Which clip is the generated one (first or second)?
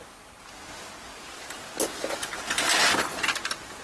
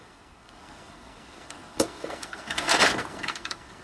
second